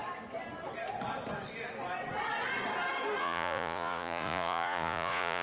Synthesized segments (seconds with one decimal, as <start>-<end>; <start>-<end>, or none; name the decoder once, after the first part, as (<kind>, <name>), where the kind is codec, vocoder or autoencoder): 3.2-5.4 (vocoder, Vocos)